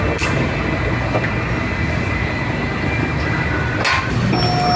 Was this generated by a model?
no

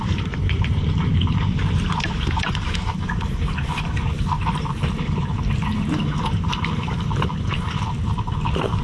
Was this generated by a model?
yes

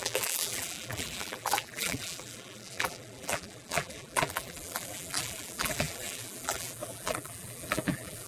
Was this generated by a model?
yes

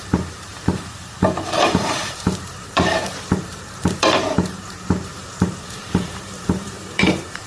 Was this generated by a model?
yes